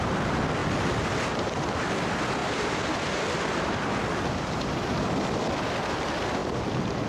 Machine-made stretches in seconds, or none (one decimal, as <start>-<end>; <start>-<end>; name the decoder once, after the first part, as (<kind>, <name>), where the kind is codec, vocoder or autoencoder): none